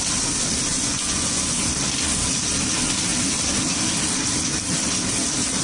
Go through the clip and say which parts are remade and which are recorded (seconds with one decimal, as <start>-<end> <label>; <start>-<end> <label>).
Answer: 0.0-0.7 recorded; 0.7-1.7 remade; 1.7-5.6 recorded